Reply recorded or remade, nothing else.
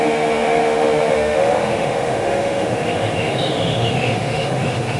remade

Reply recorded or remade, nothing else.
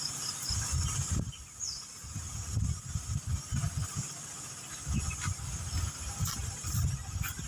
recorded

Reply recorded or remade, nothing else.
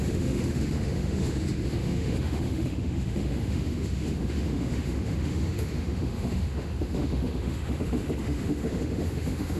remade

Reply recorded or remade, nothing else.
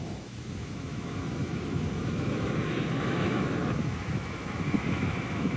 remade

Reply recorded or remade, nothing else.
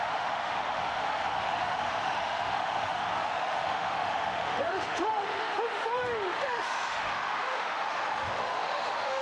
remade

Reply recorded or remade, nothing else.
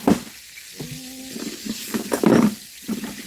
recorded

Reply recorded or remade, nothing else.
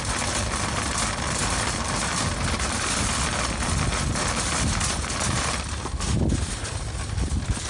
recorded